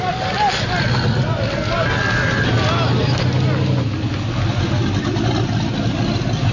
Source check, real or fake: real